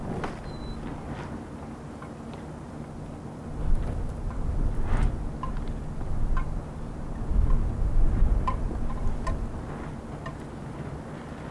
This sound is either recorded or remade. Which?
recorded